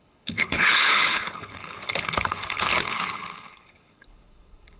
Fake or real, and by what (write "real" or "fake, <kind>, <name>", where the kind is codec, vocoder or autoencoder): fake, codec, HILCodec